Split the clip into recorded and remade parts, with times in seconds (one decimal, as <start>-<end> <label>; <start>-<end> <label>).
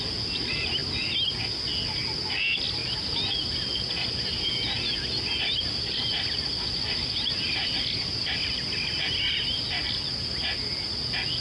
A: 0.0-2.8 recorded; 2.8-7.8 remade; 7.8-11.4 recorded